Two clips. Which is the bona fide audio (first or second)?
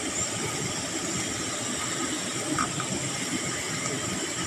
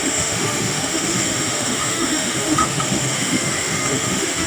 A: first